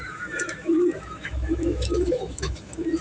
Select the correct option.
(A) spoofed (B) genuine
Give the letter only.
A